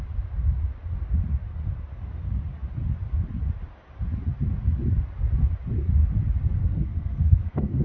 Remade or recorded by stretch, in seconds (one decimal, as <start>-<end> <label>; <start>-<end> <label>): 0.0-6.6 recorded; 6.6-7.8 remade